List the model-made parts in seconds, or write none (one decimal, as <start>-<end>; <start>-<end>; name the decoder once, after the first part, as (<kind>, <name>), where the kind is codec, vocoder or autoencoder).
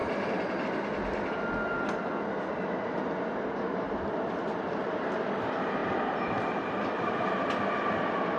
none